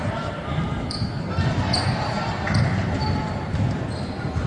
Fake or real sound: fake